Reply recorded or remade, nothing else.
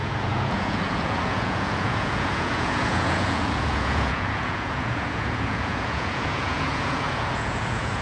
remade